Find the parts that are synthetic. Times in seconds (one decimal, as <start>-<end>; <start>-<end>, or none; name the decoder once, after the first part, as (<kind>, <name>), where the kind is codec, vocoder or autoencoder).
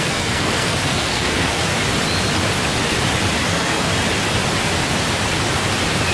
0.0-1.7 (codec, SNAC); 3.5-3.9